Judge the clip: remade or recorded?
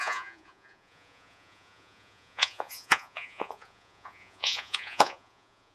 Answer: remade